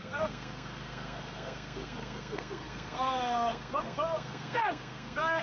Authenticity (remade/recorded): remade